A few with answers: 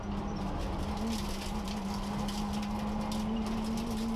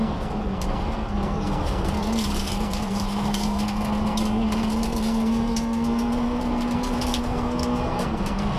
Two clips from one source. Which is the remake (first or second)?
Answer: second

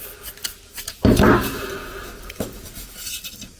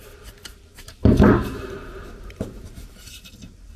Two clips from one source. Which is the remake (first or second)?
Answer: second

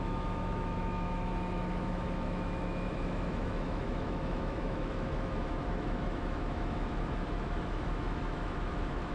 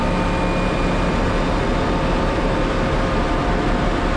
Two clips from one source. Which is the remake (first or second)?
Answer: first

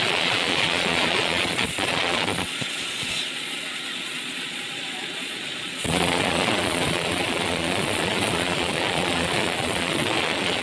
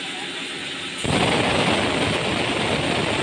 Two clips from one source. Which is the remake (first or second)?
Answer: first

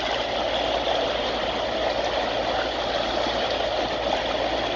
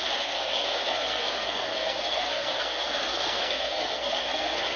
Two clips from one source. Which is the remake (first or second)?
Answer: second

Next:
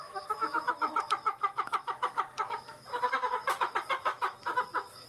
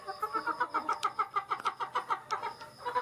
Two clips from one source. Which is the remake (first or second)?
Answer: first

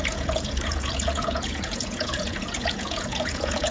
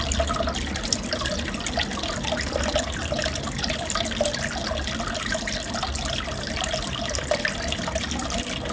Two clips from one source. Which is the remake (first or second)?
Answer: first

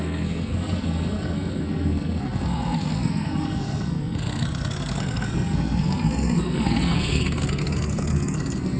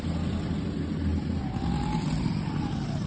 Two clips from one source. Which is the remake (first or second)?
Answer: first